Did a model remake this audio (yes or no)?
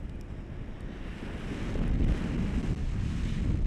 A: no